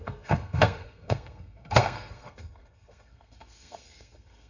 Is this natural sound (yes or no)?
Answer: no